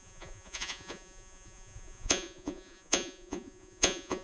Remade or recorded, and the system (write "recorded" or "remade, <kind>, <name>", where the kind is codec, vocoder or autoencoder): remade, vocoder, Vocos